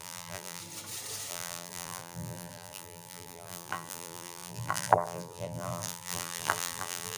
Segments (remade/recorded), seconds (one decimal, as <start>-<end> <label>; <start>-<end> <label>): 0.0-0.6 remade; 0.6-1.3 recorded; 1.3-7.2 remade